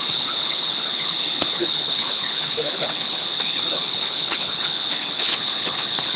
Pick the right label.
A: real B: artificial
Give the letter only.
B